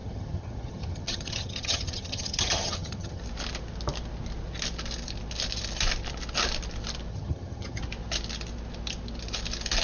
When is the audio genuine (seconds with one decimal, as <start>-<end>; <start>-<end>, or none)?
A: 3.2-7.1; 7.8-9.8